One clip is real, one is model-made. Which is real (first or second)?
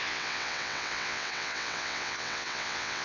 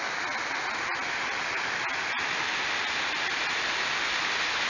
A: second